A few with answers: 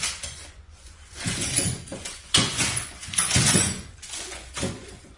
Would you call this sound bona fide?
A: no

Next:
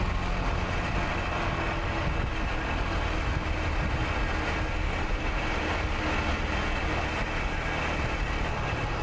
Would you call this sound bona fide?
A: yes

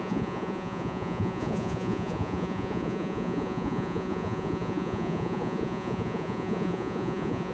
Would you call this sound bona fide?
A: no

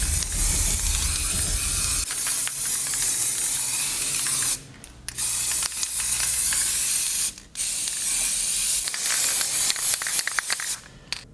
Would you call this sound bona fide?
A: yes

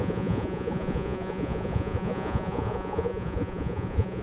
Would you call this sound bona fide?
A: no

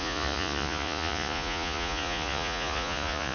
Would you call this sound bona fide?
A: no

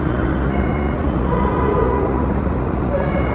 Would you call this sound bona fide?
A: no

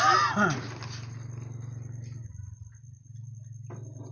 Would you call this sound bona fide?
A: yes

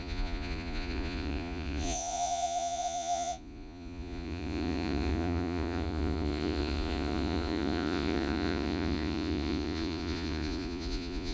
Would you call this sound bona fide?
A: no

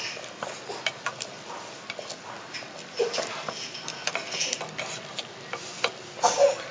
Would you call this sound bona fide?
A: yes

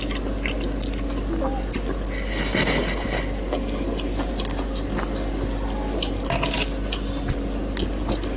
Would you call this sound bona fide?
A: yes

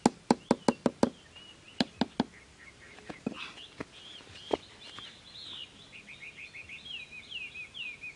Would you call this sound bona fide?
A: yes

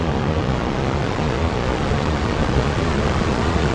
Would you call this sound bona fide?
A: no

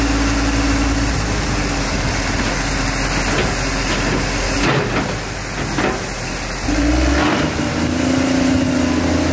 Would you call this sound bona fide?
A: yes